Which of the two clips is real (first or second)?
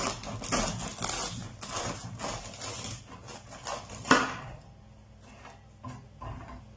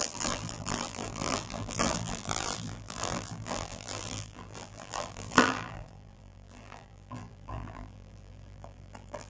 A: first